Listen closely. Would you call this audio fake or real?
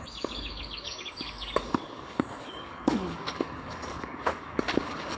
fake